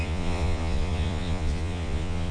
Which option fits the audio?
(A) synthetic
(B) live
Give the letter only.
A